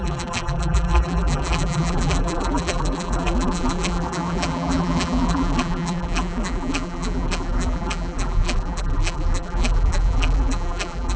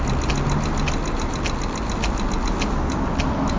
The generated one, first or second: first